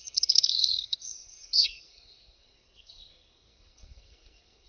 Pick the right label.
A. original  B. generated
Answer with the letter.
B